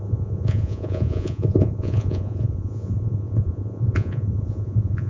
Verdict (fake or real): fake